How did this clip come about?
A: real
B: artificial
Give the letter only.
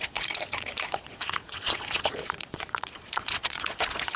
B